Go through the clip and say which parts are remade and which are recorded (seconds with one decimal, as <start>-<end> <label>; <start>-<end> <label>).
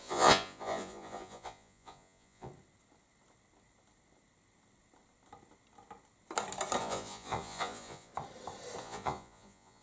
0.0-2.5 remade; 2.5-6.8 recorded; 6.8-8.1 remade; 8.1-8.8 recorded; 8.8-9.8 remade